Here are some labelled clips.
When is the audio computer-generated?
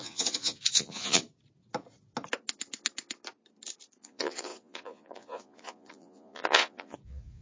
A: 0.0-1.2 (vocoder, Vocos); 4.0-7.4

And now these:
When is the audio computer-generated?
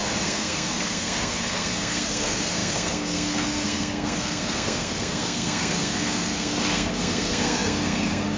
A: 0.0-8.4 (codec, SNAC)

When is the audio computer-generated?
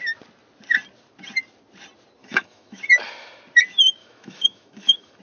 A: 2.2-2.8 (autoencoder, DAC-VAE); 4.0-5.2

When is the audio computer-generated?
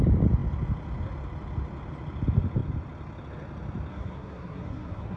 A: 3.9-5.2 (codec, SNAC)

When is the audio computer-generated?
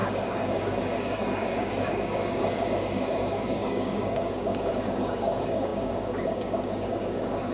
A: 0.0-7.5 (codec, DAC)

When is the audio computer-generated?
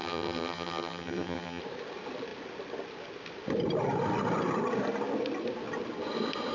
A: 0.0-1.6 (vocoder, HiFi-GAN)